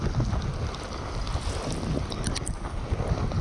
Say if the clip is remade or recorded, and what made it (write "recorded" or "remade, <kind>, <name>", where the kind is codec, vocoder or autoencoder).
recorded